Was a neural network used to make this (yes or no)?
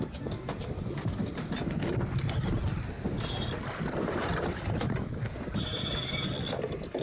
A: no